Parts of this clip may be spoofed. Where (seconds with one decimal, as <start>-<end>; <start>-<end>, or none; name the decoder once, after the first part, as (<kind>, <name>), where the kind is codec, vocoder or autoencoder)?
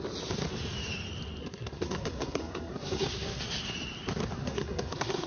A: 1.4-3.4 (codec, SNAC); 4.4-5.3